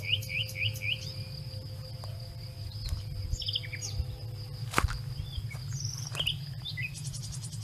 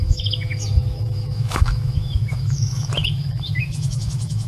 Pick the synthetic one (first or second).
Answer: second